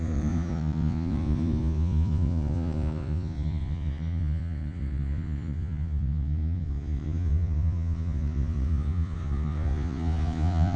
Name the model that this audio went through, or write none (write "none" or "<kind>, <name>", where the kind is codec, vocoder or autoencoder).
vocoder, Vocos